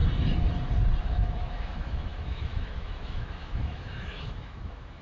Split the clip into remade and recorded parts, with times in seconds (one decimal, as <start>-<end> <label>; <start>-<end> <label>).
0.0-1.0 recorded; 1.0-5.0 remade